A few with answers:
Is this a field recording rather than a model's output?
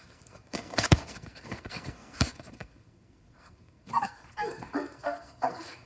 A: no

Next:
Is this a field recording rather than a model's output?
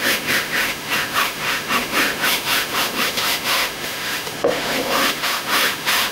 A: no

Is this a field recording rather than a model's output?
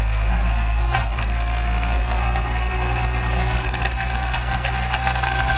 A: no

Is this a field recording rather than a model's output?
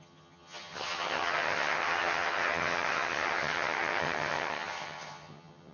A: no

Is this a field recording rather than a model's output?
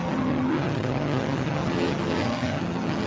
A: no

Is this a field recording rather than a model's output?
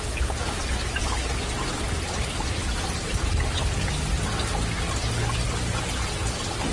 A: yes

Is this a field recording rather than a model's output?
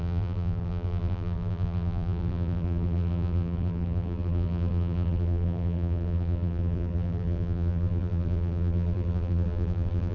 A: no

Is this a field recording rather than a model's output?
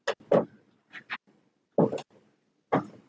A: yes